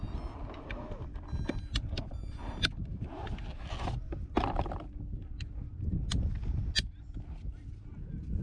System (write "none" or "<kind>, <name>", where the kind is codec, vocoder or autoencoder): none